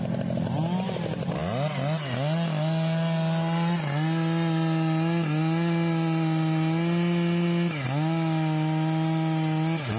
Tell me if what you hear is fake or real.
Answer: real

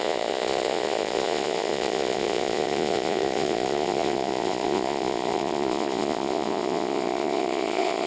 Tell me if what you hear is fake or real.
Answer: fake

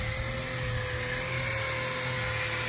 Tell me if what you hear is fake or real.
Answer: real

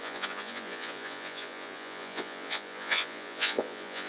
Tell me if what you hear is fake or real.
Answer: fake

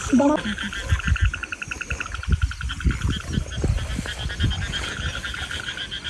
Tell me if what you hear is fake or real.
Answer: real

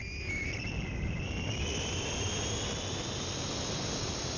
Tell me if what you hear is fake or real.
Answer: real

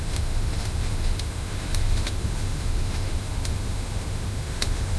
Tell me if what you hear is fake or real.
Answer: fake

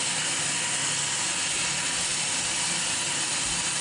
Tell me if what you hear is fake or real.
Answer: real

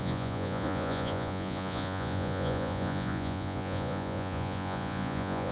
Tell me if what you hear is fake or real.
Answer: fake